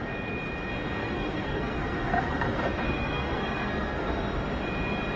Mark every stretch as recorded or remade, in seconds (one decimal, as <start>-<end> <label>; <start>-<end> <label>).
0.0-1.0 recorded; 1.0-4.1 remade; 4.1-5.2 recorded